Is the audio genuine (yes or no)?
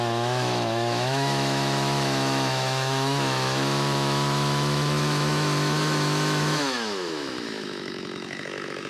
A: no